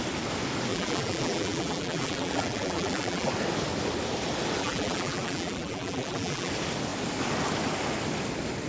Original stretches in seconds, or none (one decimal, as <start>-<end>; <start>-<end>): 0.0-0.7; 3.3-4.6; 6.5-8.7